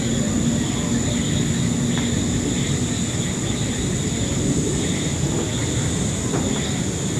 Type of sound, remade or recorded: recorded